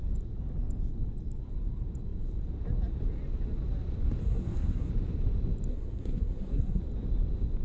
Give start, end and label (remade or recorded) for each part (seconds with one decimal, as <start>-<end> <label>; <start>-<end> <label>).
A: 0.0-4.2 recorded; 4.2-4.9 remade; 4.9-5.7 recorded; 5.7-6.8 remade; 6.8-7.6 recorded

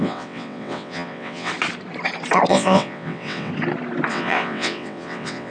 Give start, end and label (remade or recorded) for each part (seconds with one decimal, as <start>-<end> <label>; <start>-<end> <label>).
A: 0.0-1.5 remade; 1.5-2.5 recorded; 2.5-3.5 remade; 3.5-4.1 recorded; 4.1-5.5 remade

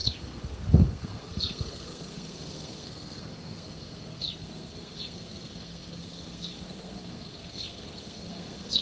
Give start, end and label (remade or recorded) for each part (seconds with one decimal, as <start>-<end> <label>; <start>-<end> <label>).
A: 0.0-8.8 remade

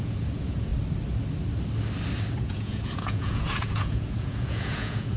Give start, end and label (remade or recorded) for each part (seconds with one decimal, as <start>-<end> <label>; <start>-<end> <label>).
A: 0.0-0.7 remade; 0.7-2.4 recorded; 2.4-5.2 remade

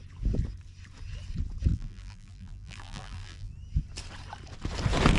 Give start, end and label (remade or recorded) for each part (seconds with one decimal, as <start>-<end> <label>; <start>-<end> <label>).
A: 0.0-1.7 recorded; 1.7-3.5 remade; 3.5-5.2 recorded

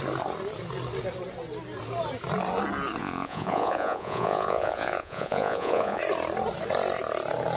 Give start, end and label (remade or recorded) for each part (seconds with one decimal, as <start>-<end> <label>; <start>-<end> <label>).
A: 0.0-3.0 recorded; 3.0-6.0 remade; 6.0-7.6 recorded

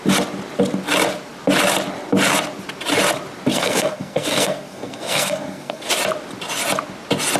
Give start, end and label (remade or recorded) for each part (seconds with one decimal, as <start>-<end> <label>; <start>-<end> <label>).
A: 0.0-3.5 recorded; 3.5-5.9 remade; 5.9-7.4 recorded